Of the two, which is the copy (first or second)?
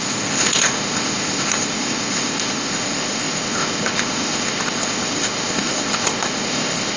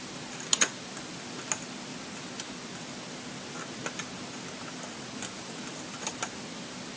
first